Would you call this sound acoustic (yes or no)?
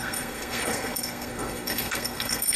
no